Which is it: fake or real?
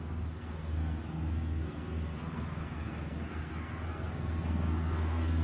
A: fake